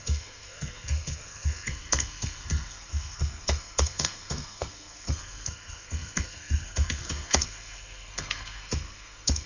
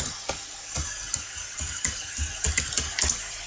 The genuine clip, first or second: second